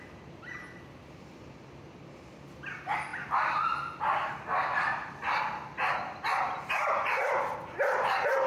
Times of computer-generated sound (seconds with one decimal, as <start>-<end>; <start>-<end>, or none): none

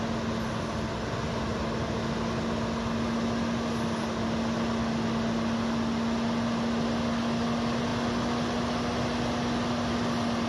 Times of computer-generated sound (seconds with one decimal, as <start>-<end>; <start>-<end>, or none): none

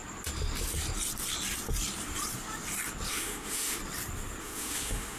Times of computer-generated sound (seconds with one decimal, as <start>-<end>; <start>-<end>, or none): 3.1-3.8; 4.4-5.2

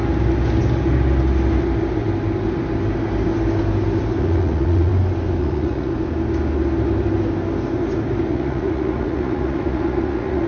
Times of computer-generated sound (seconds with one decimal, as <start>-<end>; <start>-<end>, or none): 4.2-4.9; 5.4-5.9; 8.3-10.5

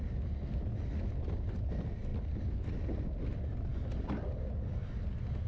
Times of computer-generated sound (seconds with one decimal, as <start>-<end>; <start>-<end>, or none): none

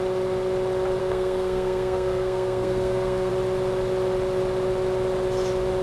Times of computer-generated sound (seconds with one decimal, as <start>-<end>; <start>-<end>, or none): 1.0-3.3